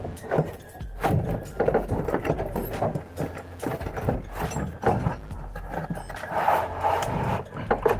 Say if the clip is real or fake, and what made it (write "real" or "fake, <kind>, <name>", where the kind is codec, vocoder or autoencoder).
real